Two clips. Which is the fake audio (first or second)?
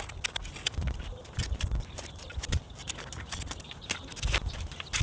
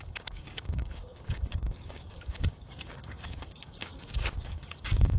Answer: second